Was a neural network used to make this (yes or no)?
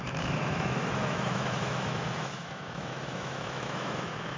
yes